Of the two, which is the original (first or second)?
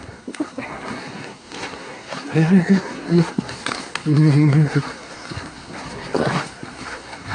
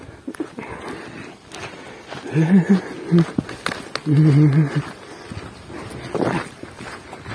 second